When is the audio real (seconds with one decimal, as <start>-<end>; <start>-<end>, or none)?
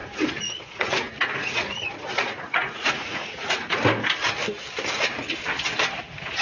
3.8-6.0